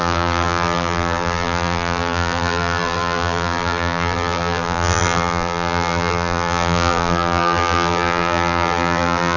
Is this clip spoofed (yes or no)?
yes